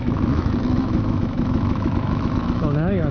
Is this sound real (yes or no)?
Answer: no